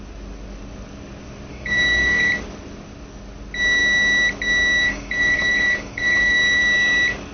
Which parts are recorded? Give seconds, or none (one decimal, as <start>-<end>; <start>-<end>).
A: 0.0-1.5; 2.3-4.8; 6.6-7.3